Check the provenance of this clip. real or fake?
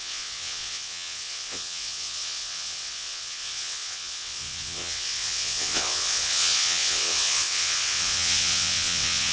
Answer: fake